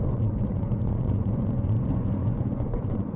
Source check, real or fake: fake